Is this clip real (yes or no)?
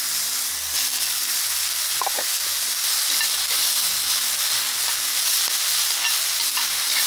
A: yes